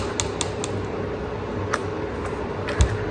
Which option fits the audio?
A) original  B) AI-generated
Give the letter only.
A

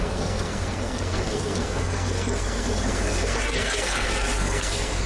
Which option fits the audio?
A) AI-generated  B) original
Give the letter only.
A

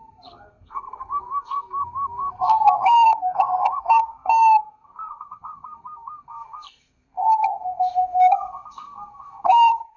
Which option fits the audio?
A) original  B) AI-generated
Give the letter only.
B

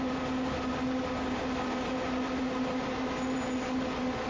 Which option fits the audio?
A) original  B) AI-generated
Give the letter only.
A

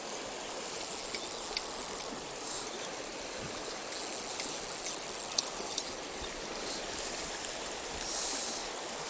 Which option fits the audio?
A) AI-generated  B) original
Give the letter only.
B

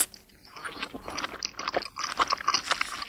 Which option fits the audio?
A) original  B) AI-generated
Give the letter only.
A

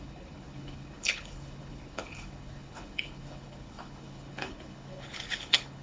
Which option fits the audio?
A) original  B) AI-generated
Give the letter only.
B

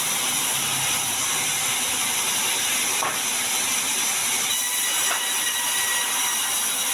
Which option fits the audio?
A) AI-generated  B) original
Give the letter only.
B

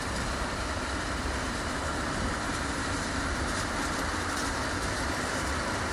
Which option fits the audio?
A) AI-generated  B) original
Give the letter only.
A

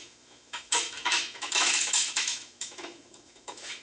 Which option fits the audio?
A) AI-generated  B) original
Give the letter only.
A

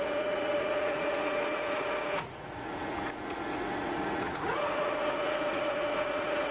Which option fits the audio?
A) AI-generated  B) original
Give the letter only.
A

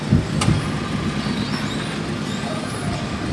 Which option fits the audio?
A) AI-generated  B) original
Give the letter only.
B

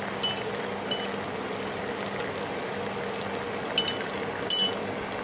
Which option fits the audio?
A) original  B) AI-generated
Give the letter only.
A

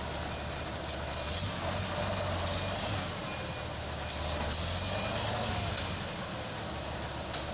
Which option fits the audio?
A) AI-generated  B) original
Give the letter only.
B